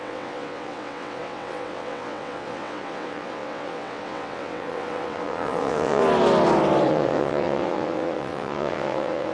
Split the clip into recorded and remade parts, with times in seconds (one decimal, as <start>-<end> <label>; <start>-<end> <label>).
0.0-6.0 remade; 6.0-6.9 recorded; 6.9-9.3 remade